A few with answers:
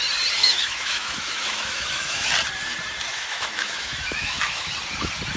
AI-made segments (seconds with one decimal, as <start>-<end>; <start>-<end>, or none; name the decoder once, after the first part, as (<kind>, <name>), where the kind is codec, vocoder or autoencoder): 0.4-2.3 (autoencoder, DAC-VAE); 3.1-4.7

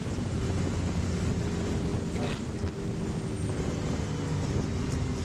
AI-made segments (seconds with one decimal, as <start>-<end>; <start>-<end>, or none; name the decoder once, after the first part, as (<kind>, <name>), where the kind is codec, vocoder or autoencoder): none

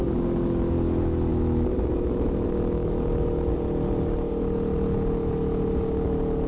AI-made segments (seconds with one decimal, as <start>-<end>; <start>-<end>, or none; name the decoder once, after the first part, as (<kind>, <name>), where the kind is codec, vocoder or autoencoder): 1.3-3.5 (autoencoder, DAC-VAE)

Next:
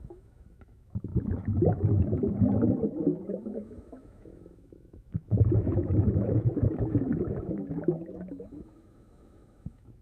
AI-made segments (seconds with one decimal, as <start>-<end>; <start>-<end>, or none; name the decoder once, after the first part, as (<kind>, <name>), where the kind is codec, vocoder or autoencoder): 0.0-10.0 (autoencoder, DAC-VAE)

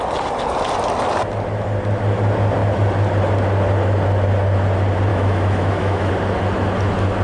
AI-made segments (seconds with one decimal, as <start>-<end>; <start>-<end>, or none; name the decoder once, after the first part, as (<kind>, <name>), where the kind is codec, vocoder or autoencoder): 5.1-6.1 (autoencoder, DAC-VAE)